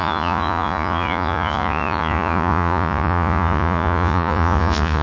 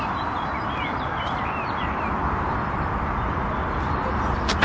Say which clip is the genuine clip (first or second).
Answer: second